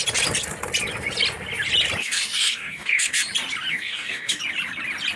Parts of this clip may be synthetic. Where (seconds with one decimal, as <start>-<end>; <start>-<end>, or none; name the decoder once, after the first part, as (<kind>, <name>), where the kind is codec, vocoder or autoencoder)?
2.0-3.2 (codec, DAC); 3.7-4.4